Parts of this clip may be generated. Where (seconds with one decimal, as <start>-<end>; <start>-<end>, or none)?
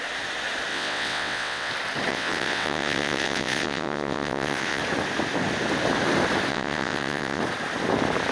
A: 0.7-1.7; 2.1-4.8; 6.5-7.4